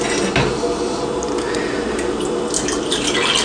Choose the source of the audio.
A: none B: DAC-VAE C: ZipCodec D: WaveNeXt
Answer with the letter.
A